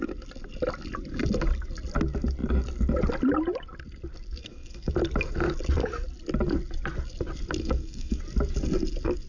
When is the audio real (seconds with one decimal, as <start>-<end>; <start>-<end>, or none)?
0.0-4.4; 4.9-7.6; 8.2-9.3